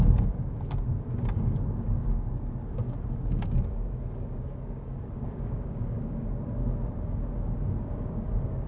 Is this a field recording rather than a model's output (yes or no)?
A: no